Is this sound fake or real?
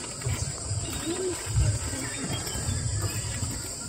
real